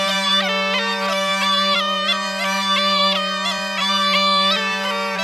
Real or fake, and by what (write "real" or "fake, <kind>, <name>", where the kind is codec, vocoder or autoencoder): fake, vocoder, BigVGAN v2